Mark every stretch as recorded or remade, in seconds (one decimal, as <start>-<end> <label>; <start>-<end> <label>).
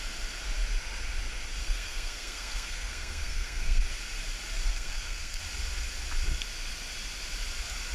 0.0-1.6 recorded; 1.6-3.8 remade; 3.8-4.7 recorded; 4.7-5.4 remade; 5.4-7.9 recorded